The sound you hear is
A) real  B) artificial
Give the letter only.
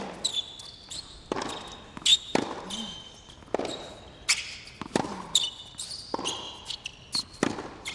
A